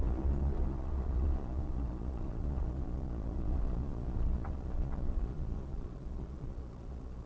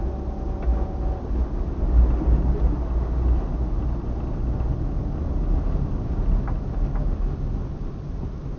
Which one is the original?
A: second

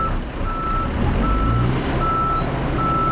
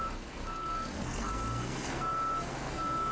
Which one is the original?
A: first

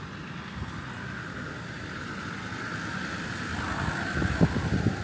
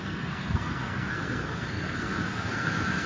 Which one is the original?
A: first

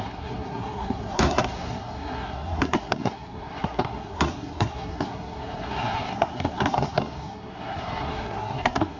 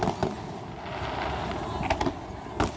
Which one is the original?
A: second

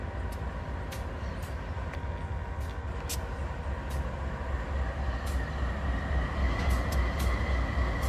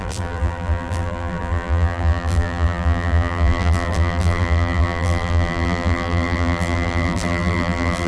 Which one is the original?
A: first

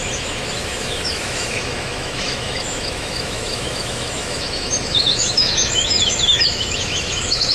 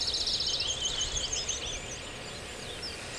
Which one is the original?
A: second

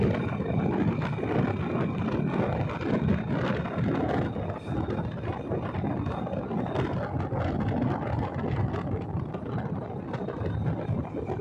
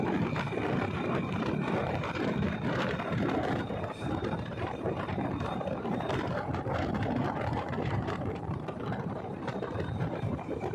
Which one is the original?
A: first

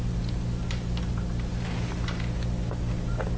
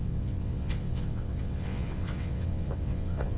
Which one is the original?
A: first